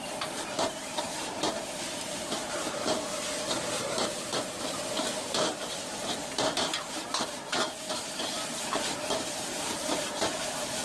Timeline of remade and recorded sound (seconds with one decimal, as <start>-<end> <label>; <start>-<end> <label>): 0.0-6.2 remade; 6.2-7.9 recorded; 7.9-10.8 remade